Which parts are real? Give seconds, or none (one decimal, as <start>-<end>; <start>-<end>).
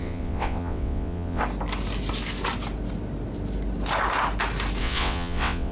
1.4-4.8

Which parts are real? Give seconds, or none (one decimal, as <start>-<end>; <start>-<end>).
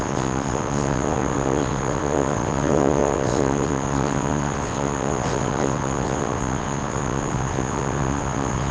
none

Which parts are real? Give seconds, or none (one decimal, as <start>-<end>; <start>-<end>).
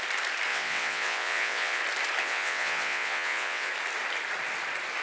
0.0-0.5; 1.8-2.2; 3.7-5.0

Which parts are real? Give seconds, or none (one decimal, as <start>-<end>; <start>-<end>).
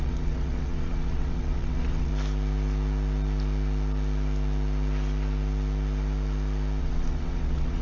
2.1-6.8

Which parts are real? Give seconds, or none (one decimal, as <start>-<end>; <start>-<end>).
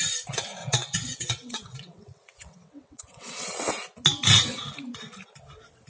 0.0-0.6; 3.7-5.9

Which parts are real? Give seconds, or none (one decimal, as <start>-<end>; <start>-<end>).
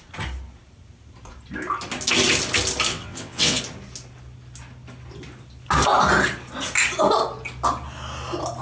0.0-2.9; 3.6-8.6